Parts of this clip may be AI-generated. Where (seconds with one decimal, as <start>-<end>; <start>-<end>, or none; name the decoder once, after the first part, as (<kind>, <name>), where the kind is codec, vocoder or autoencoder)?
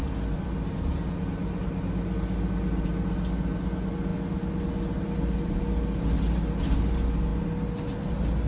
none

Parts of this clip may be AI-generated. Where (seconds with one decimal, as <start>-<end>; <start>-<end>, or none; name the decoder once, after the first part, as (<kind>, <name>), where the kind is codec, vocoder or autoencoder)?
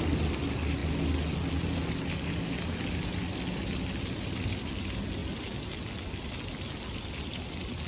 none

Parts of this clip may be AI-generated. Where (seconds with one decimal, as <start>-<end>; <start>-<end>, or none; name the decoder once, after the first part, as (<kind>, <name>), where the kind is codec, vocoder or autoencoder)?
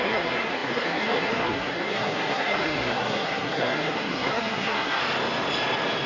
0.0-5.0 (codec, SNAC)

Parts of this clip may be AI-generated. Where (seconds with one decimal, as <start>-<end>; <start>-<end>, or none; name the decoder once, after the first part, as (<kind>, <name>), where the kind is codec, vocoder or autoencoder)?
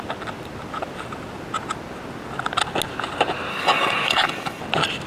3.5-4.6 (codec, DAC)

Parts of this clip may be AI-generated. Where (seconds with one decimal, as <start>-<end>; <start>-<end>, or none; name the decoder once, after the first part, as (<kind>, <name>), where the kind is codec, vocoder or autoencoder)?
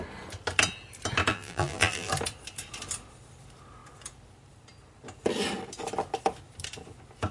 1.3-2.1 (vocoder, BigVGAN v2)